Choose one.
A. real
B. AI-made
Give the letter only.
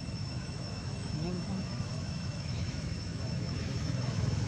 B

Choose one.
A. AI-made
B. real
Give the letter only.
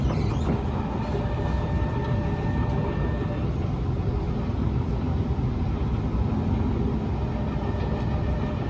B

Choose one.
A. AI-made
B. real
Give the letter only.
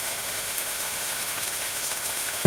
A